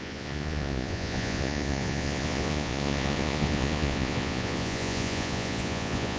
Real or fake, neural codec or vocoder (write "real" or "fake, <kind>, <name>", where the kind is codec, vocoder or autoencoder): fake, vocoder, Vocos